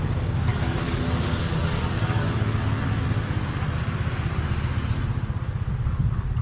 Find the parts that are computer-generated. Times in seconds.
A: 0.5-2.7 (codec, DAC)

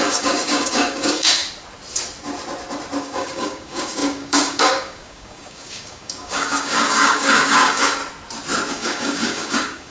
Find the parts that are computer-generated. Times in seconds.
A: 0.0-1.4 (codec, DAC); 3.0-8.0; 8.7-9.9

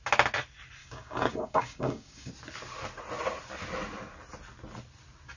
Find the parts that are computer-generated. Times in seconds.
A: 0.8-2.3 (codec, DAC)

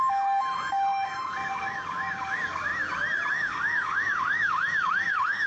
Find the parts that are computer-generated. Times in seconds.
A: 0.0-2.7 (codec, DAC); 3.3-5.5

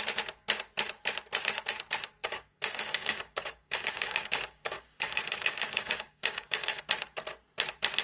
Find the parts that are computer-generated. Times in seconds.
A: 2.2-6.8 (codec, DAC)

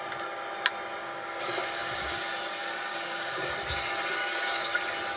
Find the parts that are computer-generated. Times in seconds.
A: 1.0-2.2 (codec, DAC); 2.6-3.5; 4.2-4.8

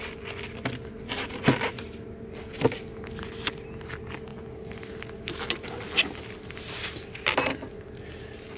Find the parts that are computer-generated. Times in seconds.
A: none